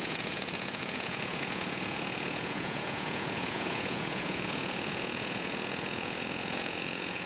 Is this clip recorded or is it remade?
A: remade